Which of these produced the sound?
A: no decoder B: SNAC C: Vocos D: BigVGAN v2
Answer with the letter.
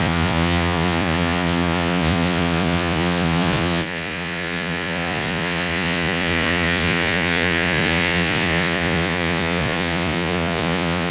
C